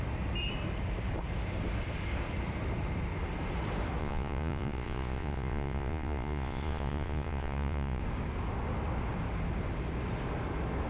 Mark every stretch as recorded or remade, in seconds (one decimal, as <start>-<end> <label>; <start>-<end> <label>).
0.0-4.0 recorded; 4.0-8.0 remade; 8.0-10.9 recorded